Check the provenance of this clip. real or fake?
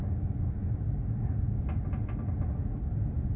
real